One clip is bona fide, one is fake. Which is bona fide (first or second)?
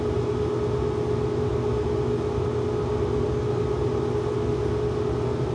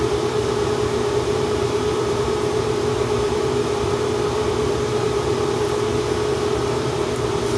first